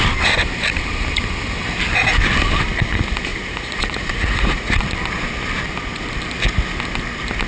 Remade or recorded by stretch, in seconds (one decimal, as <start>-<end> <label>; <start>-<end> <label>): 0.0-3.3 recorded; 3.3-4.8 remade; 4.8-7.5 recorded